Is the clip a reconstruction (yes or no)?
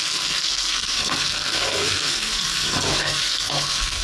yes